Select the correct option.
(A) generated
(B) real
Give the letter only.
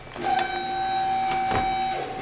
B